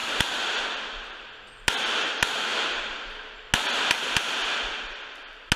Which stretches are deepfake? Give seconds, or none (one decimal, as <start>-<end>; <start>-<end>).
0.0-1.8